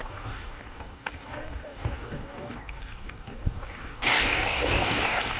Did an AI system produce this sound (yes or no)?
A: yes